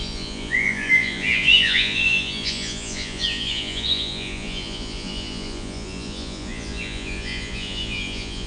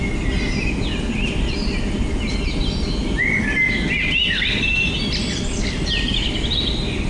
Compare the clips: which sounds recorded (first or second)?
second